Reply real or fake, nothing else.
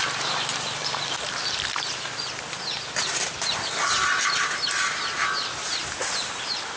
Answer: fake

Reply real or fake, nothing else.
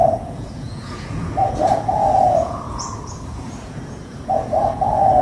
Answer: fake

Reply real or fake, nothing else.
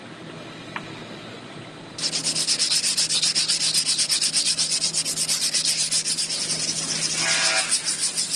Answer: real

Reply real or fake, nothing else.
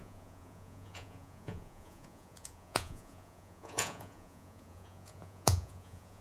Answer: fake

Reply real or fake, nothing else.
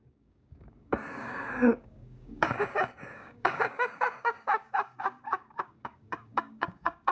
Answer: fake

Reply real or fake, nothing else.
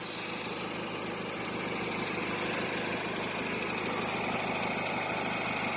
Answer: real